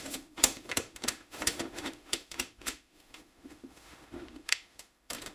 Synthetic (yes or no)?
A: yes